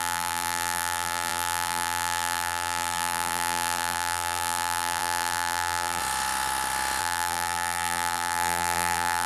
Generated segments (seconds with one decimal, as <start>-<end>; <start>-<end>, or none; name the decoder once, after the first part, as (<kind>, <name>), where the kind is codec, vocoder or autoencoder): 0.0-6.0 (vocoder, BigVGAN v2); 7.0-9.3